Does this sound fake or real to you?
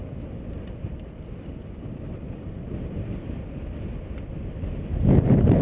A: real